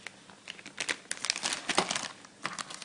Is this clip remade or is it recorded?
recorded